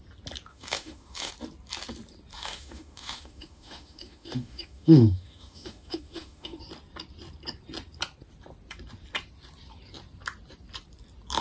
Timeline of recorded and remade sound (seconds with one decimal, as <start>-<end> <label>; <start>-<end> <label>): 0.0-0.5 recorded; 0.5-1.3 remade; 1.3-2.3 recorded; 2.3-6.6 remade; 6.6-11.4 recorded